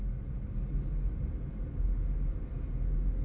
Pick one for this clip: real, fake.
real